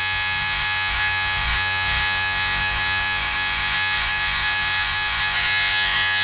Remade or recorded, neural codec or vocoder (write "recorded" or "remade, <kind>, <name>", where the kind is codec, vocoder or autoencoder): remade, vocoder, Vocos